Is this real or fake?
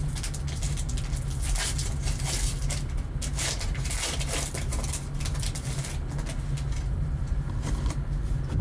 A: real